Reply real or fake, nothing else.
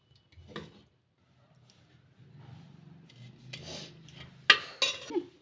real